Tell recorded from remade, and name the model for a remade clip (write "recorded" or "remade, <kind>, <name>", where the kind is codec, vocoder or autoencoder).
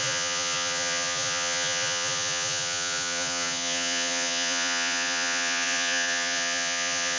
remade, vocoder, Vocos